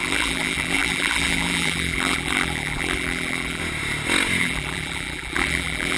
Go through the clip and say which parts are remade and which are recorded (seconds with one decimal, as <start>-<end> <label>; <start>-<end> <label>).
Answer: 0.0-3.6 remade; 3.6-4.4 recorded; 4.4-6.0 remade